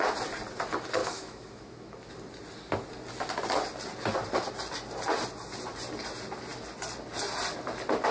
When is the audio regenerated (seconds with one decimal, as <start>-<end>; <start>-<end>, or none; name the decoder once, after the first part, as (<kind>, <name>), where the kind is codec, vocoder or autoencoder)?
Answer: 1.0-2.1 (autoencoder, DAC-VAE)